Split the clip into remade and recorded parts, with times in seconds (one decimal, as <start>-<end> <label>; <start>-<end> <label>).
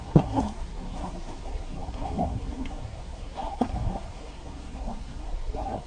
0.0-5.9 remade